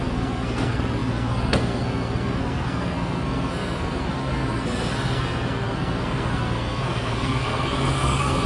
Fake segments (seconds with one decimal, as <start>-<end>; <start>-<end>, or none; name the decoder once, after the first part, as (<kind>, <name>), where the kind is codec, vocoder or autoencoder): 0.0-8.5 (codec, SNAC)